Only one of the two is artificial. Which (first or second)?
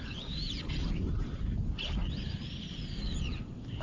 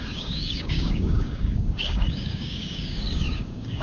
second